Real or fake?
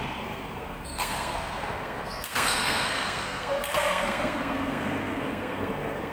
fake